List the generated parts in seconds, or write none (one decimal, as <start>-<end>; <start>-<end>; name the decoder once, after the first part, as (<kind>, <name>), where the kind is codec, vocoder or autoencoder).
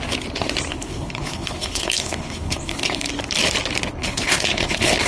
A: 0.7-3.1 (codec, HILCodec); 4.0-5.1